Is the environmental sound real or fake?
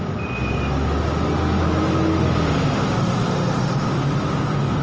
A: real